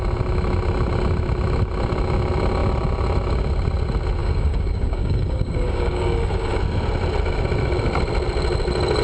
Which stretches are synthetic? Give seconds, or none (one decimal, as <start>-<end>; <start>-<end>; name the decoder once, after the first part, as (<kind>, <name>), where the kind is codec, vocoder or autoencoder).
4.2-6.6 (codec, DAC)